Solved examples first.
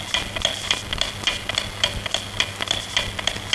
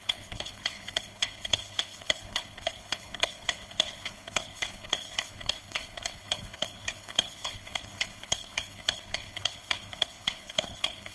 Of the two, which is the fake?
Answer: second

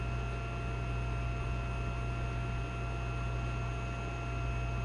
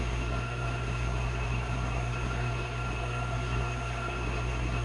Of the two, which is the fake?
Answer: second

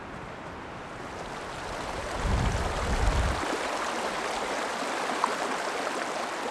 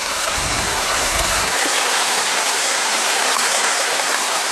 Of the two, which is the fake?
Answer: second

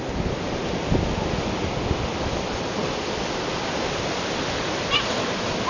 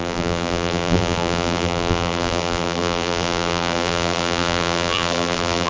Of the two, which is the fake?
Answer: second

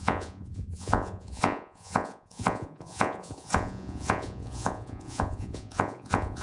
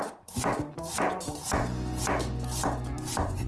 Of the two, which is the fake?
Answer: first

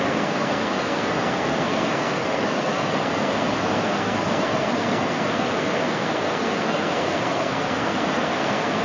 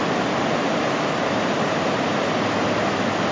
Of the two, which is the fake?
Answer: first